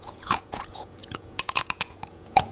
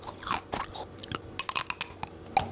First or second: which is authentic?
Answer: second